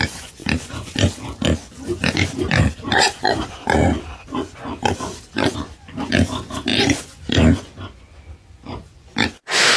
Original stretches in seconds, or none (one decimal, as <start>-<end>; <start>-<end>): none